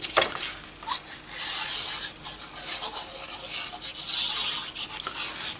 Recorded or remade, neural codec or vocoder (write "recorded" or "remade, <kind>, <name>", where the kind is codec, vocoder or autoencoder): recorded